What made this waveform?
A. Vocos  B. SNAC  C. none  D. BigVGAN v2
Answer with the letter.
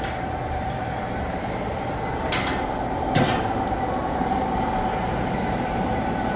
D